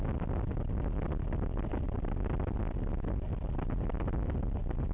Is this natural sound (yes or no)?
yes